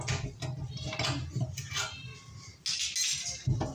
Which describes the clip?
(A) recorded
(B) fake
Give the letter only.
A